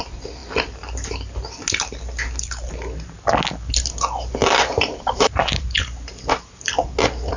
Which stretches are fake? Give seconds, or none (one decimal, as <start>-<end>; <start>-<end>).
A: 4.4-6.9